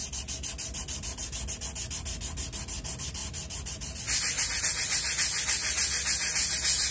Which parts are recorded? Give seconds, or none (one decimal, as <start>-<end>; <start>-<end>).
0.0-6.9